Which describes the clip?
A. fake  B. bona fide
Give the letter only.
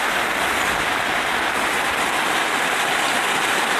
B